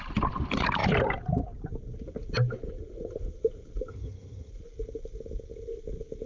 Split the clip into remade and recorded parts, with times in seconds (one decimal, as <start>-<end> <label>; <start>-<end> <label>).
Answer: 0.0-3.9 recorded; 3.9-4.5 remade; 4.5-6.3 recorded